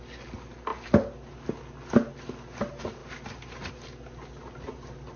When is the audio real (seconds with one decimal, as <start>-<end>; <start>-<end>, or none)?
0.0-5.2